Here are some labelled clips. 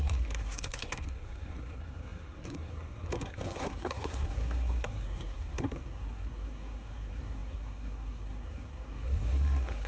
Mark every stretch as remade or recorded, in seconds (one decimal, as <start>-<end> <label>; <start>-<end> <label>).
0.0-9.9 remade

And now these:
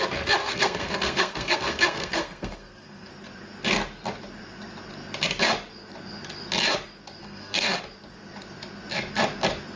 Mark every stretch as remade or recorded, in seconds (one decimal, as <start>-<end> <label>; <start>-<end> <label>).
0.0-0.4 recorded; 0.4-3.1 remade; 3.1-7.2 recorded; 7.2-7.8 remade; 7.8-9.8 recorded

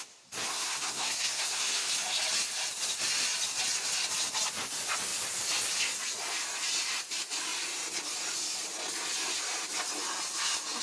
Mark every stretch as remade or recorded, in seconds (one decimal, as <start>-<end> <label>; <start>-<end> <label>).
0.0-0.5 recorded; 0.5-1.9 remade; 1.9-10.8 recorded

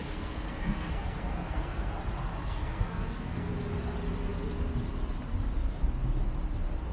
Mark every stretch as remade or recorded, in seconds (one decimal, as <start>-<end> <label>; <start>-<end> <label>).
0.0-1.9 remade; 1.9-2.3 recorded; 2.3-3.5 remade; 3.5-6.9 recorded

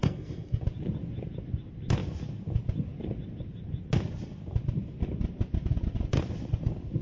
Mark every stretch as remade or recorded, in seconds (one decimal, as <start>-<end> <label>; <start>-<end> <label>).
0.0-0.6 remade; 0.6-7.0 recorded